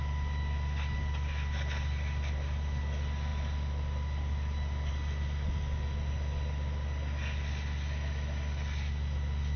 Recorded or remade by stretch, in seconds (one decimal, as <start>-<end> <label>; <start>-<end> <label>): 0.0-9.6 recorded

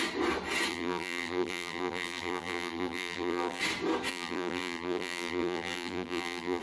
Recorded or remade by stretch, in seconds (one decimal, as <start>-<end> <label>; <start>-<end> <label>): 0.0-0.7 recorded; 0.7-3.6 remade; 3.6-4.1 recorded; 4.1-6.6 remade